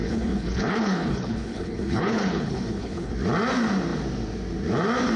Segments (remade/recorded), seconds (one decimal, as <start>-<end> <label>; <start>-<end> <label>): 0.0-3.1 remade; 3.1-5.2 recorded